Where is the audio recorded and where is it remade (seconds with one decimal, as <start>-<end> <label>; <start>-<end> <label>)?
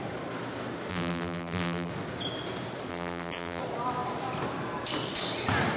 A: 0.0-0.9 recorded; 0.9-1.9 remade; 1.9-2.9 recorded; 2.9-3.6 remade; 3.6-5.8 recorded